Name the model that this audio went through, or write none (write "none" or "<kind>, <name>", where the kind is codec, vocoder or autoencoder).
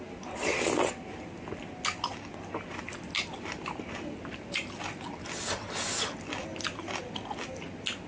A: none